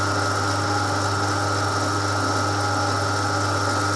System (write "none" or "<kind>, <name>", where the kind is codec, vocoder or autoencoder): none